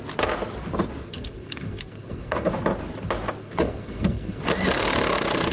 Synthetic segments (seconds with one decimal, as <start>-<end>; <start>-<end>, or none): 1.0-2.5; 3.4-4.4